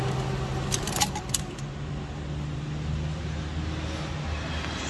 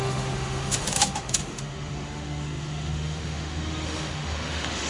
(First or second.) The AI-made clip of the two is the second